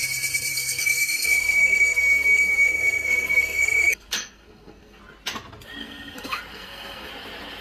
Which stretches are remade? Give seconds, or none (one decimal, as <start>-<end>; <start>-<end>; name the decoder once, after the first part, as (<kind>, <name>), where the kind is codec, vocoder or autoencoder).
0.5-5.0 (codec, SNAC); 5.8-7.1

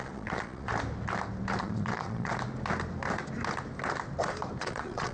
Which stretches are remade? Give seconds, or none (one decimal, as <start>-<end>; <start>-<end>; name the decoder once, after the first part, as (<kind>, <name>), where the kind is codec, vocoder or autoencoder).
0.0-0.7 (vocoder, Vocos); 1.6-2.3; 4.6-5.1

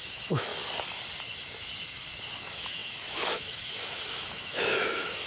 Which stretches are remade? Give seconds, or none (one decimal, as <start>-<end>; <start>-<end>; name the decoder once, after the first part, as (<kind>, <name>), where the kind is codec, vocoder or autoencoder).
0.0-0.5 (autoencoder, DAC-VAE); 2.4-5.3

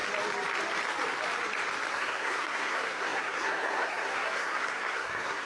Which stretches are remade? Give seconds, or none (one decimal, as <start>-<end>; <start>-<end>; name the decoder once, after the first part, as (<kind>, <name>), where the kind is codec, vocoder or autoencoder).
1.9-5.5 (codec, SNAC)